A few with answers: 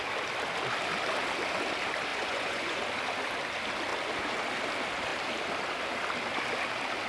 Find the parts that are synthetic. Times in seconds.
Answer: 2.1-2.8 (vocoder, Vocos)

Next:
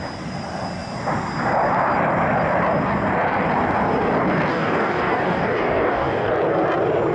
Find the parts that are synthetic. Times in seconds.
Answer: 4.5-6.3 (codec, DAC)

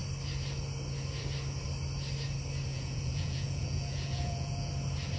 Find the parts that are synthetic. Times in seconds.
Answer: 2.7-4.7 (vocoder, Vocos)

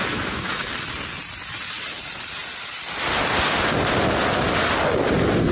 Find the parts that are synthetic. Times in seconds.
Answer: 0.0-0.7 (autoencoder, DAC-VAE)

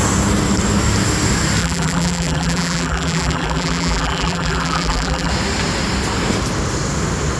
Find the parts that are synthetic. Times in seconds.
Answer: 1.6-5.3 (vocoder, BigVGAN v2)